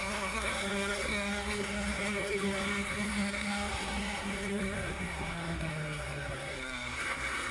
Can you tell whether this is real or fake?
fake